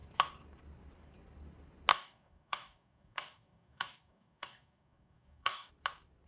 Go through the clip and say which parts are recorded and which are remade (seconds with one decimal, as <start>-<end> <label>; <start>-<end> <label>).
0.0-1.9 recorded; 1.9-5.7 remade; 5.7-6.3 recorded